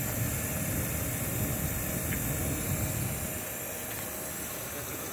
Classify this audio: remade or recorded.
recorded